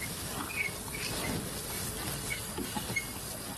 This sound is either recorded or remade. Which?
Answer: recorded